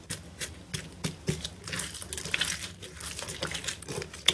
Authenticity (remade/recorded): recorded